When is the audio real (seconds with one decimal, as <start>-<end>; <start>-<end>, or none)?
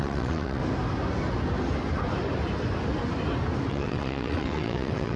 0.6-3.7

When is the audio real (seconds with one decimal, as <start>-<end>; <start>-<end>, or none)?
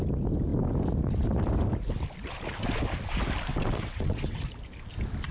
0.0-3.5; 4.4-5.3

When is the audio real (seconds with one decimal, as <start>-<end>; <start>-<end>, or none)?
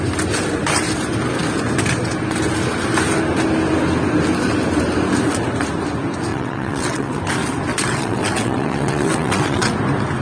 0.0-6.3; 7.2-7.7; 9.7-10.2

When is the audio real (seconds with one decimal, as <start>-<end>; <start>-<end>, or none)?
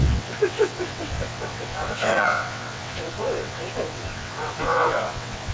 none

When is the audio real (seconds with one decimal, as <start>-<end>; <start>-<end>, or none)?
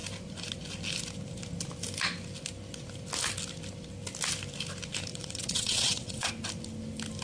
0.0-5.1; 6.3-7.2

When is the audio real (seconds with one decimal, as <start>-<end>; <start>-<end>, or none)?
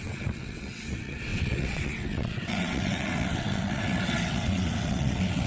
none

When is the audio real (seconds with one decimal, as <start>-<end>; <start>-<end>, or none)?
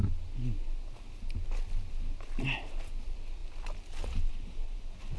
0.0-5.2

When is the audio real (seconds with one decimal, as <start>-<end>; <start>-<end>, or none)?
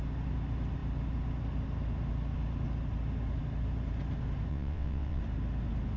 0.0-4.5; 5.2-6.0